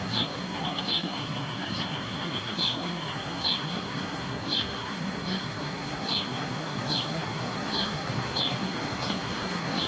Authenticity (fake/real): fake